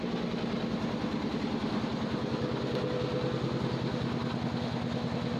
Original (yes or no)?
yes